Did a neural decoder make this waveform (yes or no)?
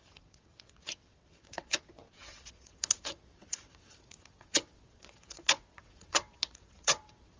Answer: yes